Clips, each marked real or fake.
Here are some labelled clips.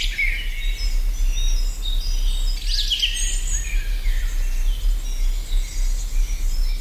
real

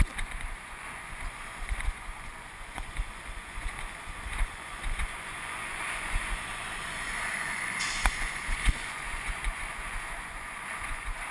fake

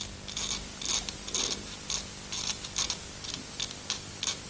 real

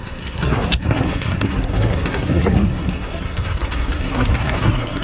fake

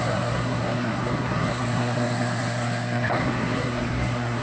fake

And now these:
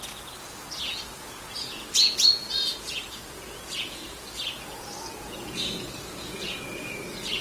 fake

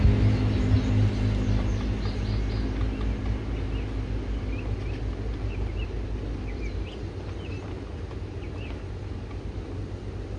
real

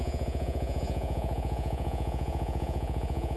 fake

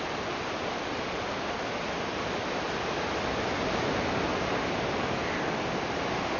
real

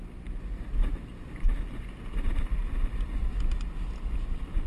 real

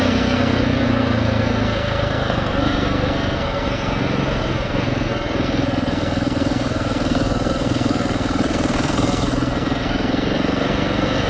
fake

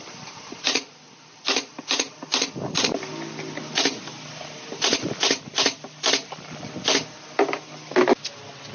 real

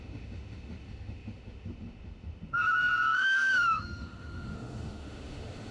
fake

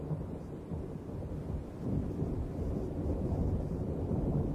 fake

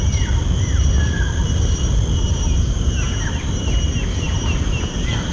real